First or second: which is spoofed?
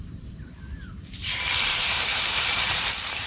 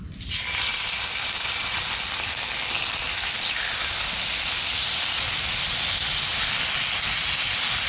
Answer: first